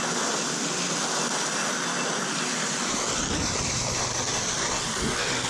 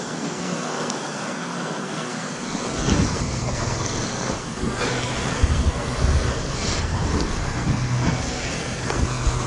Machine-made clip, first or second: second